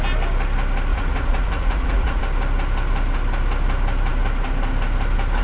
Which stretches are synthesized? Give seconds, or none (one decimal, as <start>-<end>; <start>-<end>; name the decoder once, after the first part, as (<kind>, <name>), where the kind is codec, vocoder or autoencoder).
0.9-2.2 (vocoder, Vocos)